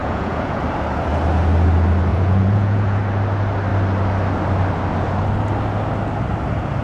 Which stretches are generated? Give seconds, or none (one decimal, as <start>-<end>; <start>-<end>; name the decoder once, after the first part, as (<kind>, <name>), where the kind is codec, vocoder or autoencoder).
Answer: 0.0-0.6 (vocoder, Vocos); 2.1-3.0